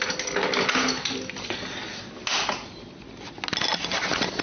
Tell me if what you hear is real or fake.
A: real